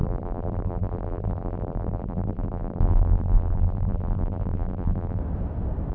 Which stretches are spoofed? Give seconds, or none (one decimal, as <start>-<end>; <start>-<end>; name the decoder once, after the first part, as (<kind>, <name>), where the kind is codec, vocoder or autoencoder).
0.0-5.2 (vocoder, BigVGAN v2)